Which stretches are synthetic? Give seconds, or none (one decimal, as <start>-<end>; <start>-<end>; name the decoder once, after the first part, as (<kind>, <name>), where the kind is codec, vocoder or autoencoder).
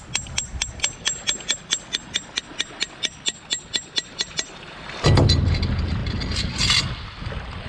none